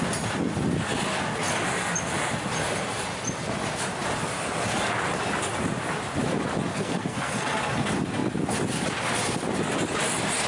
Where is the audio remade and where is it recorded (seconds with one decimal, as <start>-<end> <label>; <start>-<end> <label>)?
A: 0.0-6.7 recorded; 6.7-7.6 remade; 7.6-10.5 recorded